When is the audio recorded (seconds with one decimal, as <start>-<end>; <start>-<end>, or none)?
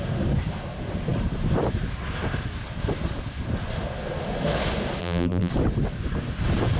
0.0-5.0; 5.5-6.8